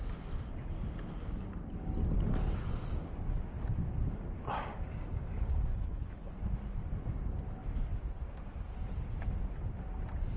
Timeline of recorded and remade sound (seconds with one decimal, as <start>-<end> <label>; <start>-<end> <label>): 0.0-5.7 recorded; 5.7-6.3 remade; 6.3-10.4 recorded